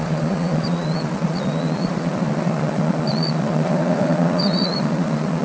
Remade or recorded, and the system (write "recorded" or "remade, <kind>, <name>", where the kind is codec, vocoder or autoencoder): remade, vocoder, Vocos